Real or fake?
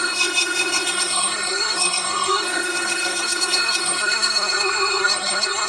fake